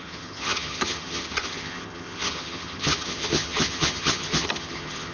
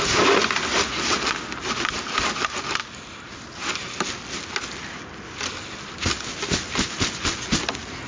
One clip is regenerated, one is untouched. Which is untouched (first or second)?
second